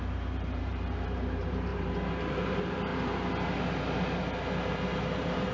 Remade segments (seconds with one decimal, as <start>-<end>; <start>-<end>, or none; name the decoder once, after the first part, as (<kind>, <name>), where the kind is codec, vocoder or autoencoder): 0.0-2.9 (vocoder, BigVGAN v2); 4.8-5.5